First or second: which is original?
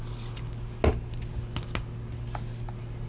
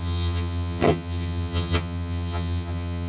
first